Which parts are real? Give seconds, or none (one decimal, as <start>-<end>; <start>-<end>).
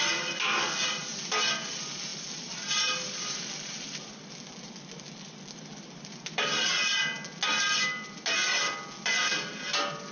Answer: 0.0-10.1